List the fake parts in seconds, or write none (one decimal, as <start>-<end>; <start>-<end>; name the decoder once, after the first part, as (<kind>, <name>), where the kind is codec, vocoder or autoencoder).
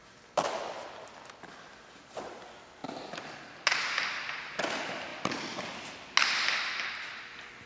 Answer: none